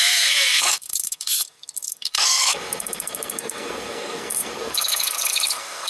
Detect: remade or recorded remade